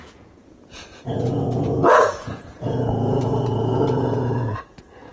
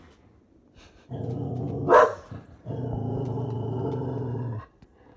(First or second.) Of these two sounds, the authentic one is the second